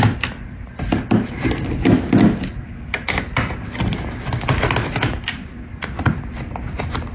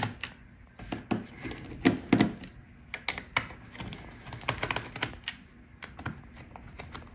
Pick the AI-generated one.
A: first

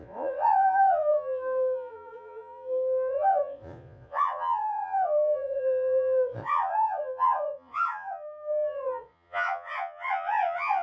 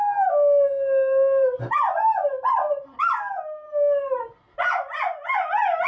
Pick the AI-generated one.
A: first